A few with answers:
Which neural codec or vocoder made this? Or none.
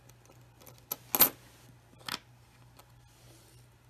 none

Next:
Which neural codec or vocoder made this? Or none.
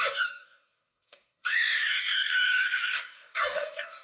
codec, DAC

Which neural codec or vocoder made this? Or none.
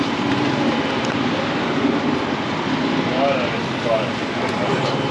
none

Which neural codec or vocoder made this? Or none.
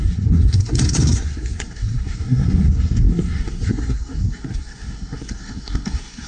codec, SNAC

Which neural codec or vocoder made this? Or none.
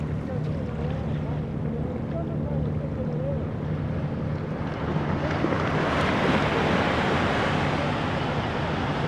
none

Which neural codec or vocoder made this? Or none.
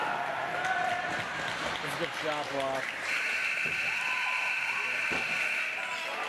none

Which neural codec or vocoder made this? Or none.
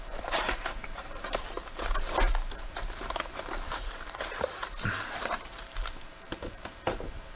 vocoder, BigVGAN v2